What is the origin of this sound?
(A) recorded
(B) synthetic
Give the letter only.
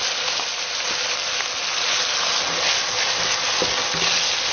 A